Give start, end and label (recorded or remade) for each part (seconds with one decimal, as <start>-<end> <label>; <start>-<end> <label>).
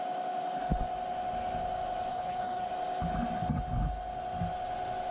0.0-2.1 recorded; 2.1-2.7 remade; 2.7-5.1 recorded